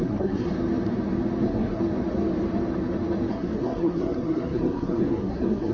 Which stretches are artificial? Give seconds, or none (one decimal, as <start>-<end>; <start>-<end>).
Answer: 0.0-0.5; 1.4-1.8; 3.3-5.7